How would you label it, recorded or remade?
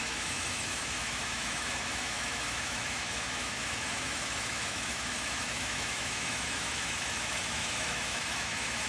remade